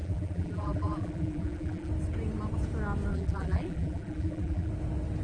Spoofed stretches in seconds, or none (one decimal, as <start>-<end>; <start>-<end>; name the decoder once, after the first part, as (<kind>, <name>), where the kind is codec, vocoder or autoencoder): 0.0-1.9 (vocoder, BigVGAN v2); 3.1-4.7